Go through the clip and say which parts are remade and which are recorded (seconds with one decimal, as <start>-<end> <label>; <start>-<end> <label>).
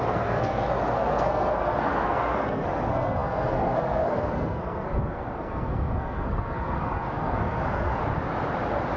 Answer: 0.0-8.0 remade; 8.0-9.0 recorded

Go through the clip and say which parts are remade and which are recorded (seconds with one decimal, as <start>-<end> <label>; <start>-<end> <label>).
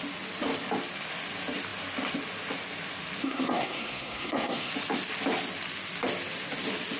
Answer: 0.0-3.2 recorded; 3.2-4.7 remade; 4.7-7.0 recorded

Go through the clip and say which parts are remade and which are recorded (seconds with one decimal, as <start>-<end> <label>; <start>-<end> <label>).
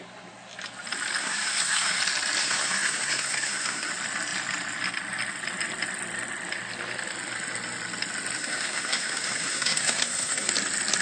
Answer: 0.0-1.2 recorded; 1.2-2.0 remade; 2.0-2.4 recorded; 2.4-3.9 remade; 3.9-8.4 recorded; 8.4-10.5 remade; 10.5-11.0 recorded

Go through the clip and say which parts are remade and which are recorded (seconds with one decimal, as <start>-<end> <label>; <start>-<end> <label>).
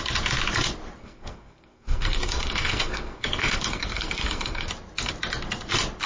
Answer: 0.0-1.0 recorded; 1.0-4.7 remade; 4.7-6.1 recorded